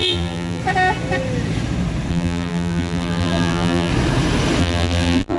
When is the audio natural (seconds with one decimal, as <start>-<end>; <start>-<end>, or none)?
0.6-2.1; 3.9-4.6